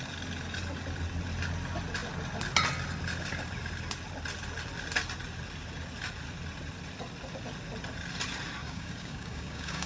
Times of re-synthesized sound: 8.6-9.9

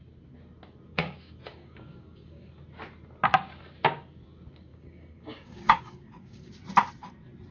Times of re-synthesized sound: 0.9-2.5; 4.7-6.5

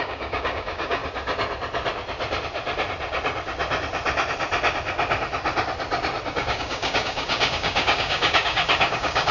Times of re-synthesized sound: 0.0-1.0; 6.3-9.3

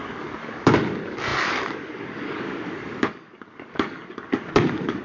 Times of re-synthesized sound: 0.0-5.0

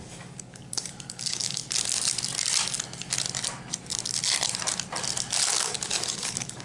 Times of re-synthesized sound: 0.0-1.6; 5.6-6.6